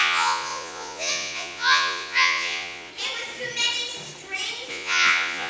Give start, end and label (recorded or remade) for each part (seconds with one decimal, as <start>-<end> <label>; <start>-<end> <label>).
0.0-2.9 remade; 2.9-4.7 recorded; 4.7-5.5 remade